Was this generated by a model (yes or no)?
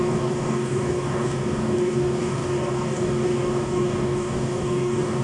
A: yes